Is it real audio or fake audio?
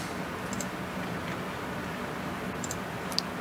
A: real